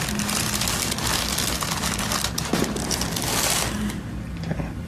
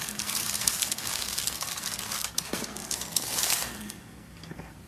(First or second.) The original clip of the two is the first